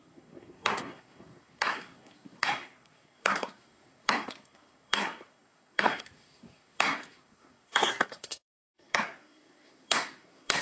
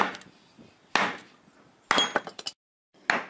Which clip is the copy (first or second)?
first